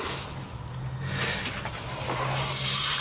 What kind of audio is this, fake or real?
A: real